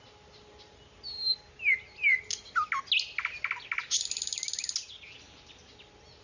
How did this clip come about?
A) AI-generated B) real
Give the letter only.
B